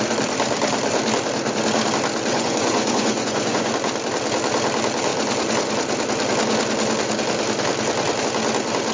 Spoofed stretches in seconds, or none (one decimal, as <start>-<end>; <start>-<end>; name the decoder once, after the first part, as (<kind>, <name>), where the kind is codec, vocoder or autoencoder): 2.3-3.7 (vocoder, Vocos)